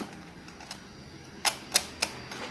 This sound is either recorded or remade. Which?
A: recorded